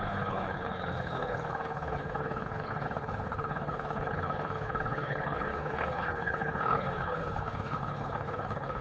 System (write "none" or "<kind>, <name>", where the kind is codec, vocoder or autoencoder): codec, HILCodec